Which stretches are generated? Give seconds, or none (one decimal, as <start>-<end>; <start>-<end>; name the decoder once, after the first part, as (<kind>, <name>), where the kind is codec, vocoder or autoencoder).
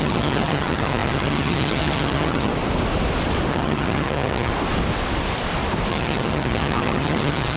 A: 0.0-2.5 (vocoder, HiFi-GAN); 3.5-4.5; 5.9-7.6